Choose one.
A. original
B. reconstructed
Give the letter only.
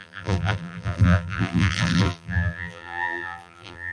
B